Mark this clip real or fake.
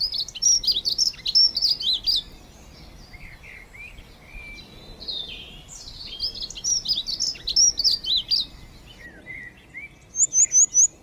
real